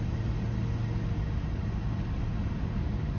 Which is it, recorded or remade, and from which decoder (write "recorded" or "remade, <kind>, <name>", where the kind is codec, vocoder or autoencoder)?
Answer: recorded